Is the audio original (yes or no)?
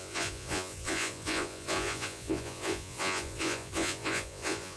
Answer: no